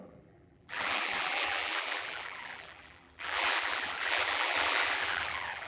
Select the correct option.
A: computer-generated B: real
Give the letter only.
A